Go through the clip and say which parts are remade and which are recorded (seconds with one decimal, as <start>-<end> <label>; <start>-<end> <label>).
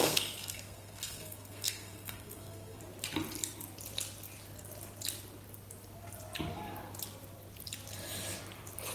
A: 0.0-2.8 remade; 2.8-8.9 recorded